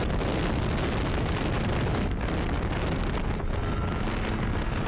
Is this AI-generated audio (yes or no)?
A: no